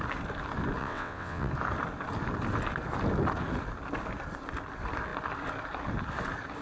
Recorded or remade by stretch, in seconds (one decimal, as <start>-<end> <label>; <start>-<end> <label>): 0.0-0.8 recorded; 0.8-1.5 remade; 1.5-6.6 recorded